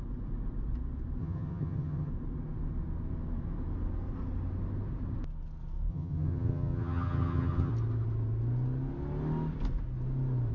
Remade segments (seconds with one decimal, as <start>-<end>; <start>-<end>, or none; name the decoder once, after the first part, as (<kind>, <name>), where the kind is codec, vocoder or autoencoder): 1.2-2.1 (vocoder, HiFi-GAN); 5.9-7.7